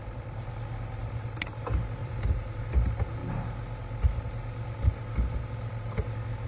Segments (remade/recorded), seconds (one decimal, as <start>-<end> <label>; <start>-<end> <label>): 0.0-2.0 recorded; 2.0-2.6 remade; 2.6-6.5 recorded